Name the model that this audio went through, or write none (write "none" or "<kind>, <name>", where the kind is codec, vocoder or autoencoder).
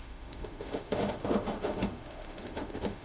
autoencoder, DAC-VAE